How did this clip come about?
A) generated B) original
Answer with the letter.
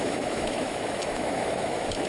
A